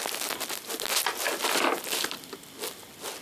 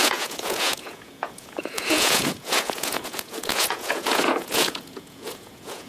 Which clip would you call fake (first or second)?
second